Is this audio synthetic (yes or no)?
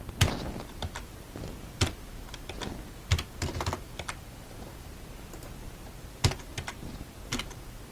no